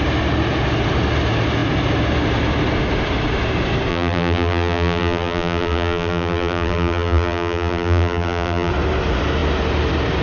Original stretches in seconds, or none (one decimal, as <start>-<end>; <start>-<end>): 0.0-3.9; 8.7-10.2